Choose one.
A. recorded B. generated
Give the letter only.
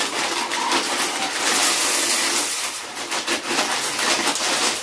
A